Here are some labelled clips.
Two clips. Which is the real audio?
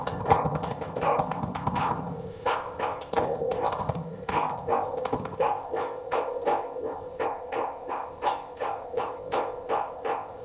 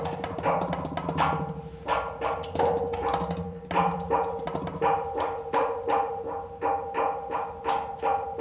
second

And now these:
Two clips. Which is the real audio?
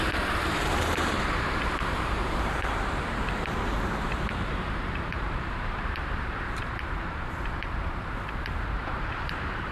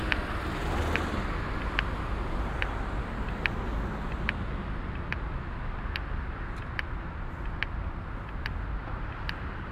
second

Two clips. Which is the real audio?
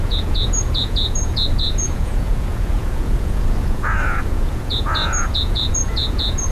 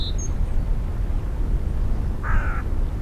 second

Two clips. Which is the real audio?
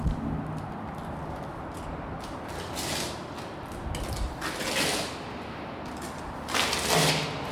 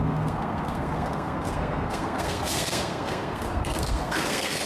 first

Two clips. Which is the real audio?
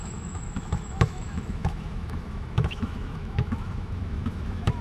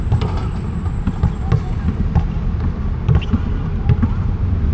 second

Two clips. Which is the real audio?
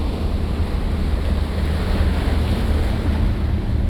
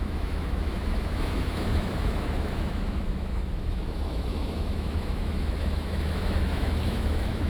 first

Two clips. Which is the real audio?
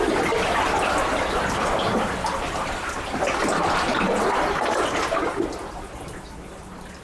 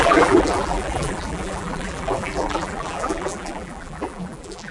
first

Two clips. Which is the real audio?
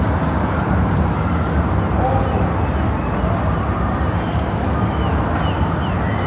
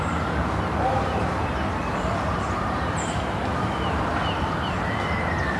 first